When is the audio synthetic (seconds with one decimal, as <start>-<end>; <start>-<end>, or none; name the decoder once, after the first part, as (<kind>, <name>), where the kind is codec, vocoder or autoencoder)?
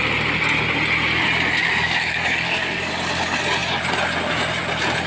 1.6-2.9 (codec, DAC)